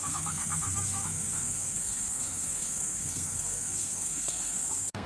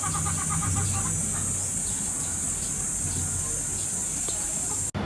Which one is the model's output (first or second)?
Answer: first